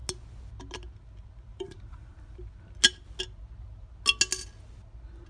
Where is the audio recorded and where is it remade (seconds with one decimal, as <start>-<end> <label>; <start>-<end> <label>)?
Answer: 0.0-5.3 recorded